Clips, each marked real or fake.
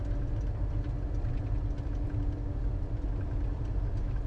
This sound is real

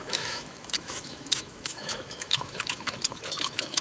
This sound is fake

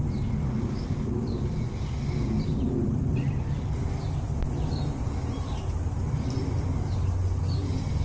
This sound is real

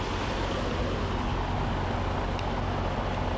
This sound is real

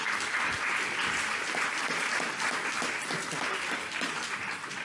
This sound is real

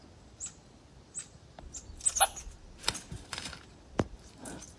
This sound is real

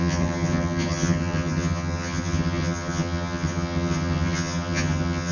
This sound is fake